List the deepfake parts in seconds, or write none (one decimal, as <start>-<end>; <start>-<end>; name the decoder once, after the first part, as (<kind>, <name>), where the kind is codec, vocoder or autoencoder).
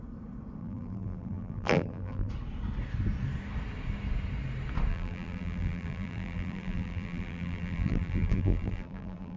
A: 0.6-2.3 (vocoder, BigVGAN v2); 4.9-9.4